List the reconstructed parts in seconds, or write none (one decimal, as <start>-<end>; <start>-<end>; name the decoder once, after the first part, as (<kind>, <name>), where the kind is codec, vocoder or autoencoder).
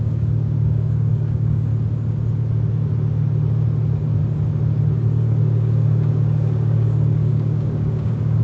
0.0-1.7 (codec, DAC); 5.2-8.4